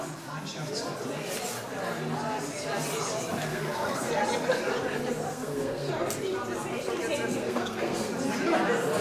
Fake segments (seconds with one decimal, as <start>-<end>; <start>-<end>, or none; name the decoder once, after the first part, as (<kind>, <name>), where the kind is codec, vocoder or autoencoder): 3.5-4.1 (codec, SNAC); 5.3-5.9; 7.3-8.1